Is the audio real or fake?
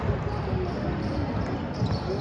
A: real